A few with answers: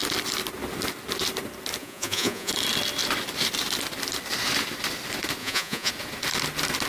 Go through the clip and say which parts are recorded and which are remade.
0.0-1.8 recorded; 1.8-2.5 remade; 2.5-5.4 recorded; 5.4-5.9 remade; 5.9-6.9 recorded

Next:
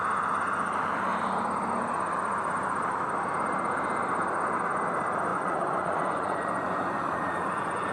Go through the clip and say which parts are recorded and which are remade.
0.0-5.3 recorded; 5.3-7.9 remade

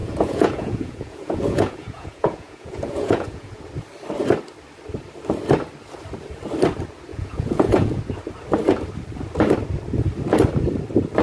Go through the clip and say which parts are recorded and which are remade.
0.0-3.6 remade; 3.6-7.1 recorded; 7.1-8.0 remade; 8.0-11.2 recorded